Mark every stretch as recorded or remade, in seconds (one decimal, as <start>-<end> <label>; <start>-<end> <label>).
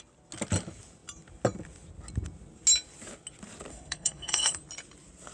0.0-3.7 recorded; 3.7-4.6 remade; 4.6-5.3 recorded